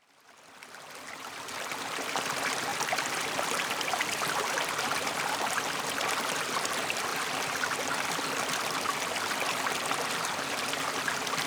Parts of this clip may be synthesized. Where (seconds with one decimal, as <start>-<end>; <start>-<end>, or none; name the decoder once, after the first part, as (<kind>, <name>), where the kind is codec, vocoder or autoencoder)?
2.7-5.8 (vocoder, BigVGAN v2)